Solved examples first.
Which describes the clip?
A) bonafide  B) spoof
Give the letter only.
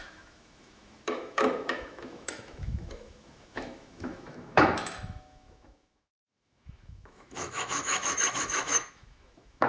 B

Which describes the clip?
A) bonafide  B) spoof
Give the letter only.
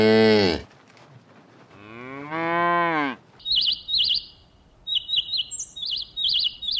A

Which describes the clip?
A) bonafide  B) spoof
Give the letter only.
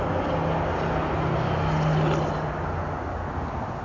A